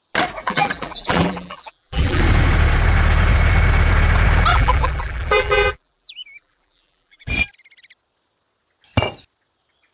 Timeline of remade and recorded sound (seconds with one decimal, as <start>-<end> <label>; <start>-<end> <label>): 0.0-0.4 recorded; 0.4-2.2 remade; 2.2-4.5 recorded; 4.5-7.3 remade; 7.3-9.9 recorded